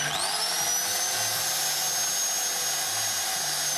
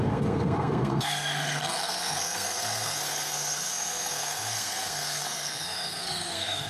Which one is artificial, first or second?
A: second